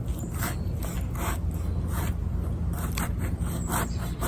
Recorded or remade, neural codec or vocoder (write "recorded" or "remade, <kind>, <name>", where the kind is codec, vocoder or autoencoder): recorded